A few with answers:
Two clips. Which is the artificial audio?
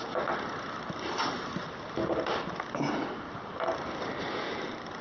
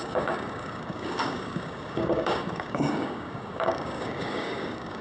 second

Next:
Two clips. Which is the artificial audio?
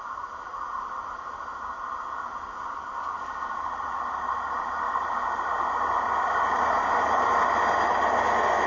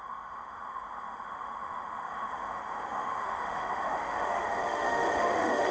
second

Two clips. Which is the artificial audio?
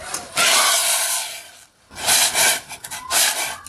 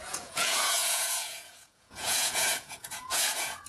second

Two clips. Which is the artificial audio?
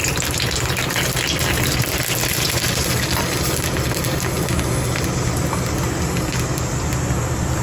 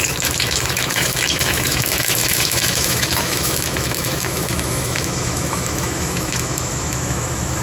second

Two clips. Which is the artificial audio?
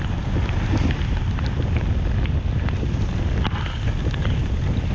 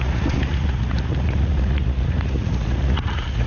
second